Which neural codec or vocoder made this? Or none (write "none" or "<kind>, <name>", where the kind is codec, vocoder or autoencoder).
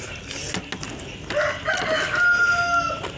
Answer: none